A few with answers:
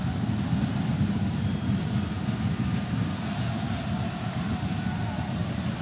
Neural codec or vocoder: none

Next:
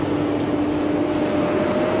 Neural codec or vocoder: none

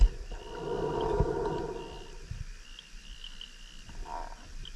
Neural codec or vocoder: none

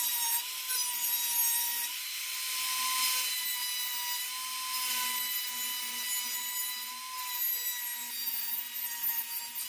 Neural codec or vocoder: none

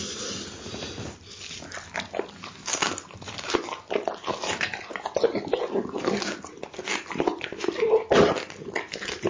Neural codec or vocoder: none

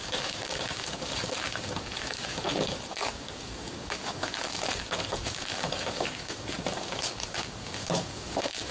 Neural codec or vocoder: codec, DAC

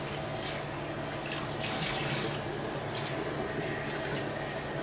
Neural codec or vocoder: none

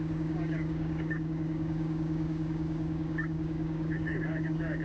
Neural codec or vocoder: codec, DAC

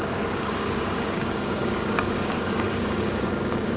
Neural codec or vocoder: codec, DAC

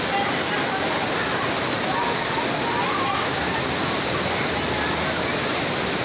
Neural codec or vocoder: none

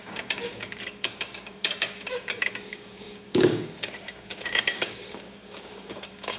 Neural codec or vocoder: codec, DAC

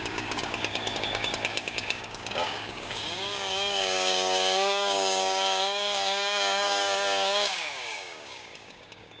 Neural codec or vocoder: codec, DAC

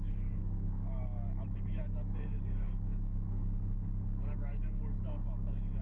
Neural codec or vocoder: codec, DAC